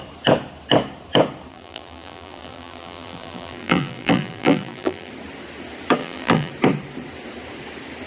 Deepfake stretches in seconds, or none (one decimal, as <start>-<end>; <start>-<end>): 1.5-5.1; 6.0-6.5